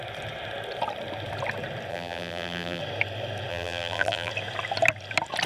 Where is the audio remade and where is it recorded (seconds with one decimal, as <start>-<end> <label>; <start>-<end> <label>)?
0.0-1.9 recorded; 1.9-2.8 remade; 2.8-3.5 recorded; 3.5-4.3 remade; 4.3-5.5 recorded